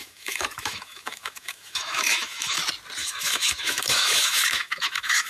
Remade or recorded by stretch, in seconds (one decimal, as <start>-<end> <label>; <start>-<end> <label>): 0.0-2.6 remade; 2.6-3.0 recorded; 3.0-5.3 remade